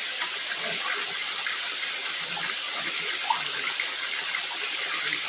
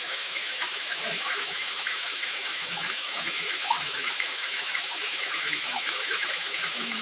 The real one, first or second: first